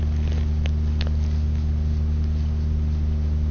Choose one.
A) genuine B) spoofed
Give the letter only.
A